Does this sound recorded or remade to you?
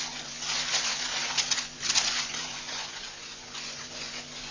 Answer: remade